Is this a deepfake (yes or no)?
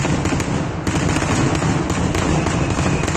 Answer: no